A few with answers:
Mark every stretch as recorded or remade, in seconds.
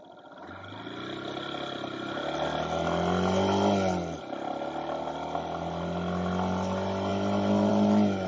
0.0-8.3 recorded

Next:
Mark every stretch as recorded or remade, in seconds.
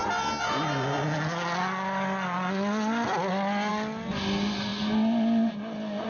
0.0-6.1 recorded